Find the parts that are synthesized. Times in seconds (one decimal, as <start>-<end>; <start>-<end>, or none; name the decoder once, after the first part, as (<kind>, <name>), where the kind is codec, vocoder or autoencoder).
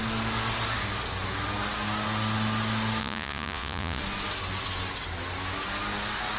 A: 3.0-4.0 (vocoder, Vocos)